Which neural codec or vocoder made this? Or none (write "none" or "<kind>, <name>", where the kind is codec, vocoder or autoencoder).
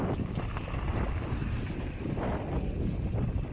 none